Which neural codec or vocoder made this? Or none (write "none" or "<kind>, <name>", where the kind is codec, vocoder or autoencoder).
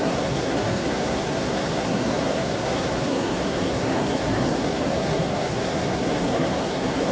codec, SNAC